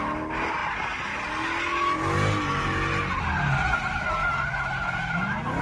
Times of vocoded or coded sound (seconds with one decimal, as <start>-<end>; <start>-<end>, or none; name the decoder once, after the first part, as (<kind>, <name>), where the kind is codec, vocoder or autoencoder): none